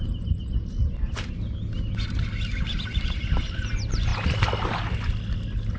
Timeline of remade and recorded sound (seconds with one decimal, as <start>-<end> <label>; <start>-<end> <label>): 0.0-5.8 recorded